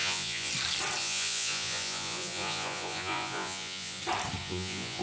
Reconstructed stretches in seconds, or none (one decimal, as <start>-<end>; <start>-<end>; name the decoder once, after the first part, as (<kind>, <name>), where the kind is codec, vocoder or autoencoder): 0.0-0.5 (vocoder, Vocos); 1.0-4.0; 4.4-5.0